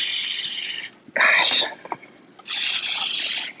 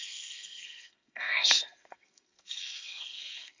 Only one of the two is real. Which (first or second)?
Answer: first